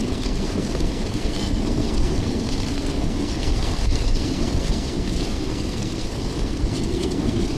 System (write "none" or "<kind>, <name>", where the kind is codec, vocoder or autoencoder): codec, SNAC